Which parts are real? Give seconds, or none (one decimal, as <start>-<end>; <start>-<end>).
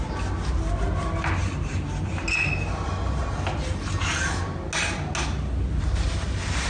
0.0-6.7